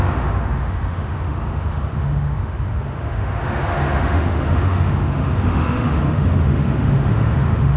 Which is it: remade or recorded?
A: remade